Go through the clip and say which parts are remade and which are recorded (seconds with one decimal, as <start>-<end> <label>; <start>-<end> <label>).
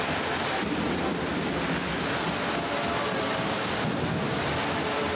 0.0-1.3 remade; 1.3-4.4 recorded; 4.4-5.1 remade